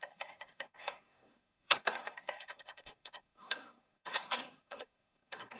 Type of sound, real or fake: fake